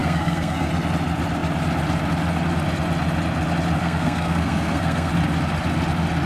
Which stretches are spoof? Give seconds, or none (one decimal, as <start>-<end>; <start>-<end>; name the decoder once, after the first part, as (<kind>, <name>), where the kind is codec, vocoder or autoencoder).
0.0-0.7 (codec, SNAC); 3.8-5.1